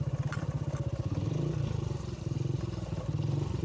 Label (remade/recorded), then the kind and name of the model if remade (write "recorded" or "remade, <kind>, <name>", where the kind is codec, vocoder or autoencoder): recorded